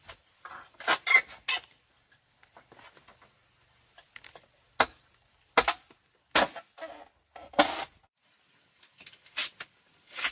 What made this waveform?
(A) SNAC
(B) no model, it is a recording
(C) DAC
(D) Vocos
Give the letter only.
B